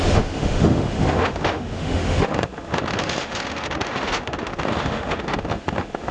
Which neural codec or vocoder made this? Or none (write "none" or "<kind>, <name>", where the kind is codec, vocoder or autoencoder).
autoencoder, DAC-VAE